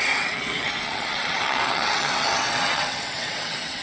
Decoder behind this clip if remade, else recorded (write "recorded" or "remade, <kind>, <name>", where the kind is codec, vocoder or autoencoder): remade, vocoder, WaveNeXt